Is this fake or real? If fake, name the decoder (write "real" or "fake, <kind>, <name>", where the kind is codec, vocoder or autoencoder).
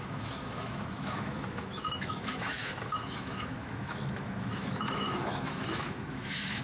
fake, autoencoder, DAC-VAE